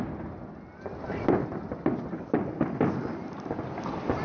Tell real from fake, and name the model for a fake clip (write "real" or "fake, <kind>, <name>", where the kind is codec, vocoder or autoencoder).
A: real